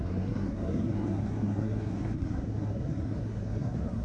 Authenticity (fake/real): fake